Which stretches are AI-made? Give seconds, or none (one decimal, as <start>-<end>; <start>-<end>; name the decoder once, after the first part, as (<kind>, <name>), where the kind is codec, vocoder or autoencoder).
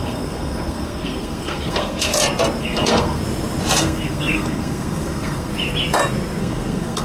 0.0-2.1 (codec, SNAC); 2.6-3.2; 3.8-5.5; 6.4-7.0